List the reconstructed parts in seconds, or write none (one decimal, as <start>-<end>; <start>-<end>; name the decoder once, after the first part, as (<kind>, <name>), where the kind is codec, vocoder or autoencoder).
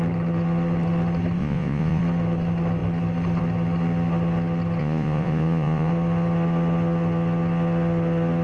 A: 1.4-2.0 (vocoder, Vocos); 4.8-5.9